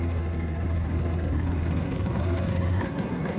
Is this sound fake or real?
fake